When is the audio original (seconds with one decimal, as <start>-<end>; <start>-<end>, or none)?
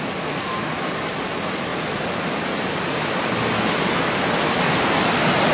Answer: 0.0-5.5